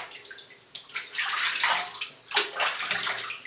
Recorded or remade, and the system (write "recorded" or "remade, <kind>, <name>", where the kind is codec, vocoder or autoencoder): recorded